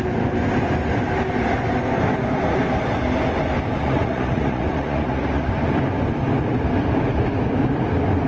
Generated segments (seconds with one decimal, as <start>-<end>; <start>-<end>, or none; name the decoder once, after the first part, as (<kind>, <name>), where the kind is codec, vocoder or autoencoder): 3.8-5.5 (vocoder, Vocos)